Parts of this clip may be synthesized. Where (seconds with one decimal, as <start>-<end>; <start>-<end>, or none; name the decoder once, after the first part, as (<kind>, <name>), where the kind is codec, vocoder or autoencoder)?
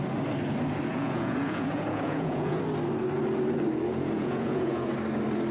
0.9-2.6 (vocoder, Vocos); 3.9-4.9